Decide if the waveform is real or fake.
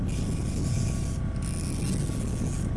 real